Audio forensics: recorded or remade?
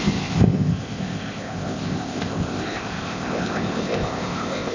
remade